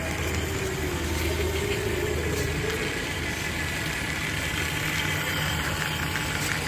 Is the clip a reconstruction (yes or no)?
no